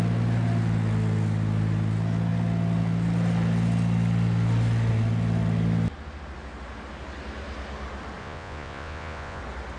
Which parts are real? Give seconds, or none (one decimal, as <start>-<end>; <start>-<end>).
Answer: 0.0-8.2; 9.4-9.8